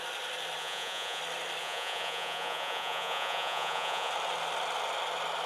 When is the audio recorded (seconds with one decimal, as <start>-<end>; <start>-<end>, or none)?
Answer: 0.0-0.6; 1.2-1.6; 4.1-5.5